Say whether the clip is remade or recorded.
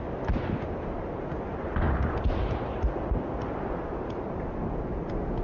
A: recorded